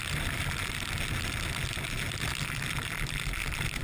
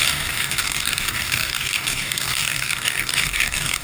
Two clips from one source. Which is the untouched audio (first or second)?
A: first